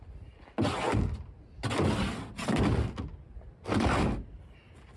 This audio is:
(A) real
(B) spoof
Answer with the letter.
A